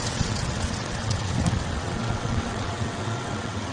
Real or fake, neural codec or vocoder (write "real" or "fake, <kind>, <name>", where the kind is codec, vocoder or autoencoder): fake, vocoder, WaveNeXt